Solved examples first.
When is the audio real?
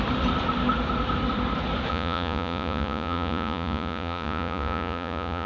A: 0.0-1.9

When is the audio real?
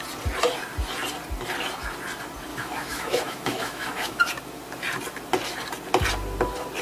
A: 0.0-2.5; 4.2-6.8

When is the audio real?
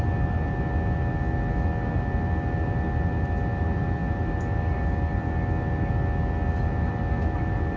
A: 0.0-7.8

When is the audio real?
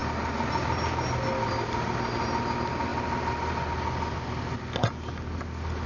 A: 0.0-5.9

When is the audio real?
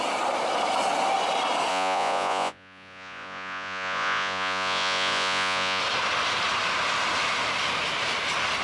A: 0.0-1.7; 5.8-8.6